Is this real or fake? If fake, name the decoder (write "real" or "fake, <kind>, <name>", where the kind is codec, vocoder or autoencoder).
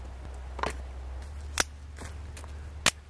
real